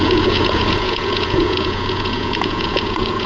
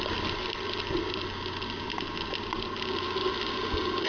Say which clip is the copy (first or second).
first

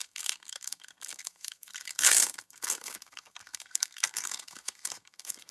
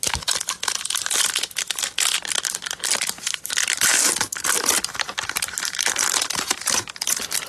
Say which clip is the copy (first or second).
first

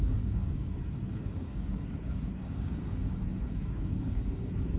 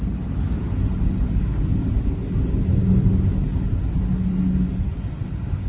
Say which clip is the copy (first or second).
first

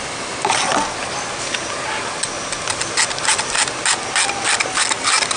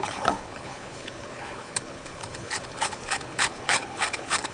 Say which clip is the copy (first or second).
second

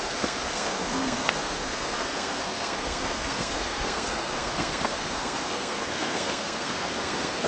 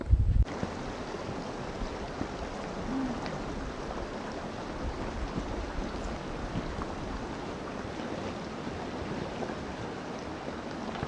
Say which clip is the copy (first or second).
first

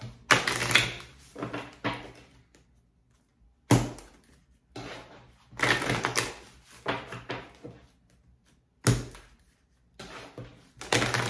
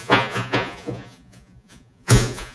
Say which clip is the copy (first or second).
second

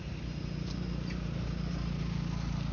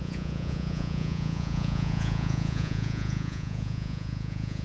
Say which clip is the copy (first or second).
second